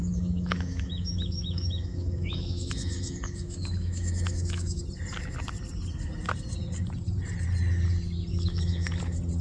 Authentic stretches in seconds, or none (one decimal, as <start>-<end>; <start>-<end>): 4.8-8.3; 9.0-9.4